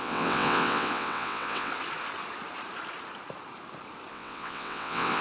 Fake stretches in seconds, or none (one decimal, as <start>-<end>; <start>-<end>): 0.0-1.7; 4.1-5.2